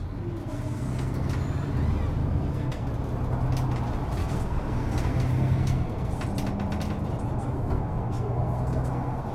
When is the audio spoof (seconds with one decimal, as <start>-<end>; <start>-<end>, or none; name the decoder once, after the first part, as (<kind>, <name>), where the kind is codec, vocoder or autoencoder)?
0.4-1.3 (codec, SNAC); 2.2-2.9; 4.2-6.2; 7.4-9.3

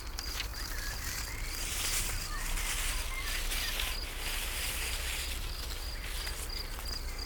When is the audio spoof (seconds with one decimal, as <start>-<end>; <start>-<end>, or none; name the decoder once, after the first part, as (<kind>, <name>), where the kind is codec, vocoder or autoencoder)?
0.5-1.9 (vocoder, BigVGAN v2)

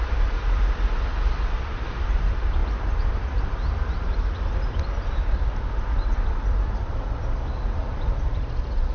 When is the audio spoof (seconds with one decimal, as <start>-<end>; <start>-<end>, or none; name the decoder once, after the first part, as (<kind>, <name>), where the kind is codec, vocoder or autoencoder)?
0.0-8.9 (vocoder, BigVGAN v2)

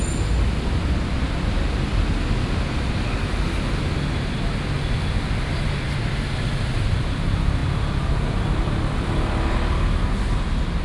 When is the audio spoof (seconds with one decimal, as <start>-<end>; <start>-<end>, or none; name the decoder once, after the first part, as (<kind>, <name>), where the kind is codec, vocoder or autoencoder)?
none

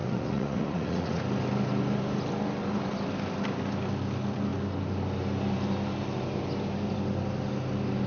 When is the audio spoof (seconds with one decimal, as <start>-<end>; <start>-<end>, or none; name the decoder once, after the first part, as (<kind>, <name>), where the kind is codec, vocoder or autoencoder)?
0.0-1.2 (vocoder, Vocos)

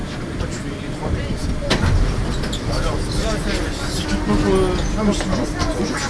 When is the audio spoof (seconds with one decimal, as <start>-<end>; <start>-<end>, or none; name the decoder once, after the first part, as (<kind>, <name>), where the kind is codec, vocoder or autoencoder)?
none

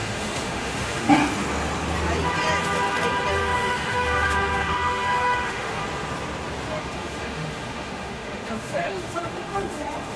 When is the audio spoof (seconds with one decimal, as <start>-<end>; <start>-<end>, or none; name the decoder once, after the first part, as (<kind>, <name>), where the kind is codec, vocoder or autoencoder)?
0.0-1.2 (autoencoder, DAC-VAE); 3.3-5.8; 6.8-10.2

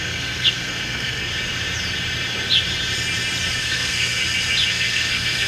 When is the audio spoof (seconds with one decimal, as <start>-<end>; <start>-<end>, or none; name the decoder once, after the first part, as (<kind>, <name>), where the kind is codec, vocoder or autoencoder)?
0.0-1.3 (codec, SNAC); 3.6-4.2; 4.7-5.5